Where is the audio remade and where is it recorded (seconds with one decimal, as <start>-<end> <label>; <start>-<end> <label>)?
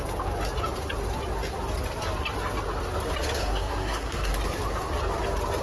0.0-3.4 recorded; 3.4-4.3 remade; 4.3-5.6 recorded